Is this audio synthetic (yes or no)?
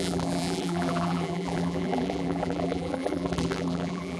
yes